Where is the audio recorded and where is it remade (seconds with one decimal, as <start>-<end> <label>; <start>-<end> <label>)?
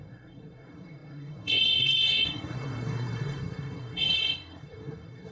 0.0-5.3 remade